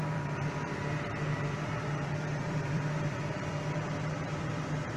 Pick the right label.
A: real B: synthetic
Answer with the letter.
B